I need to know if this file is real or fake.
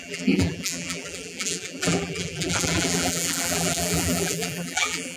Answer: fake